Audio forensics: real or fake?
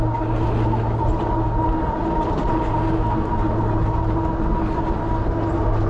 real